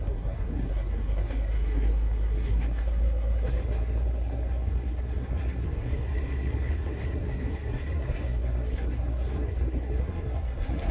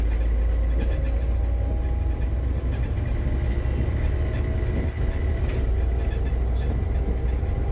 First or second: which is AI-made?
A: first